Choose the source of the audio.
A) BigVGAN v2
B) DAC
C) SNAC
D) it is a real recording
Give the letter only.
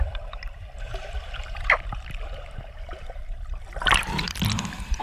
A